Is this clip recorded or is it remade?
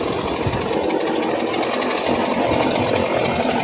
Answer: recorded